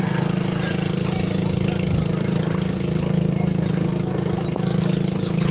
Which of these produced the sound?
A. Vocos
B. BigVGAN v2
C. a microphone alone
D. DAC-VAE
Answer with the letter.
C